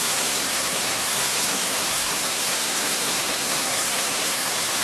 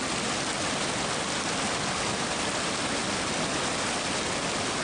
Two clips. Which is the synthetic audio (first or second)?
first